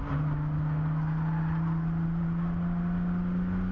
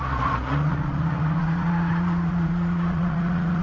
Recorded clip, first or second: first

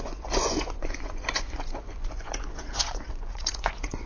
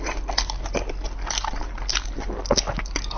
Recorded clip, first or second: second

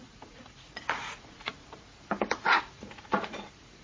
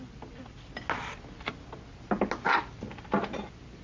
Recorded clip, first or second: second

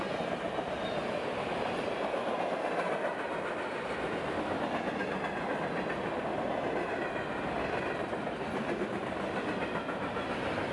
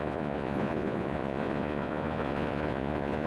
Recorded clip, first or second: first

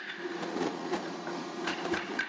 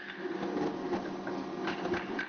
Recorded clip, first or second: second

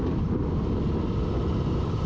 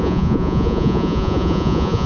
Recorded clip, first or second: first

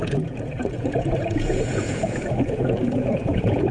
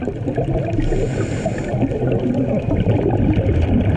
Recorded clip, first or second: second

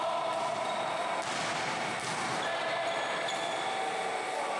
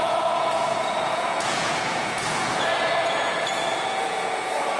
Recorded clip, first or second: first